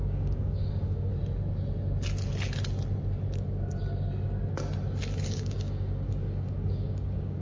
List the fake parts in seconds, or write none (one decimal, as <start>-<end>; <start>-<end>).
0.0-1.1; 5.2-7.4